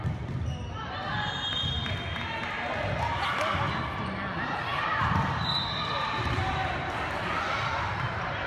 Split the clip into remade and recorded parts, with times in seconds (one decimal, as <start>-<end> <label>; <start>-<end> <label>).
0.0-4.7 recorded; 4.7-8.5 remade